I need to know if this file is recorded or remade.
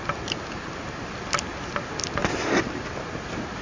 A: recorded